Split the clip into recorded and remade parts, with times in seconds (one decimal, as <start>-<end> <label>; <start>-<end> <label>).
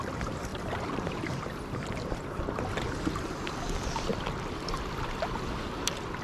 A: 0.0-0.5 recorded; 0.5-2.4 remade; 2.4-6.2 recorded